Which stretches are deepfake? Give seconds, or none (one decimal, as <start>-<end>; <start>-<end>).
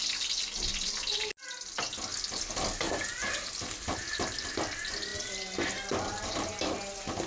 none